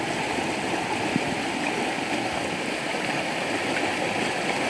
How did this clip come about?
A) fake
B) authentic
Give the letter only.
B